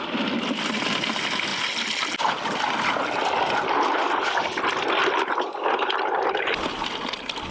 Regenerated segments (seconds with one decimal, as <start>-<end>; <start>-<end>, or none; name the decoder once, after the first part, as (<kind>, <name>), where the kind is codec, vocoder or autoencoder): none